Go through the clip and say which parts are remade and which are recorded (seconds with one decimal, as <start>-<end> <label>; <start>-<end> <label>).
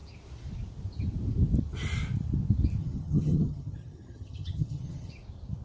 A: 0.0-2.8 recorded; 2.8-5.1 remade; 5.1-5.6 recorded